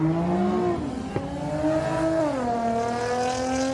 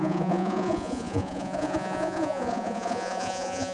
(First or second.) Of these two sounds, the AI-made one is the second